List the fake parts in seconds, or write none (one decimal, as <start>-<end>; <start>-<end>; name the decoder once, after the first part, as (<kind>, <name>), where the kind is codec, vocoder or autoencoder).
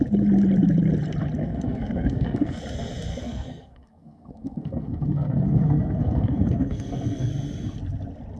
1.4-2.6 (codec, SNAC); 3.1-7.3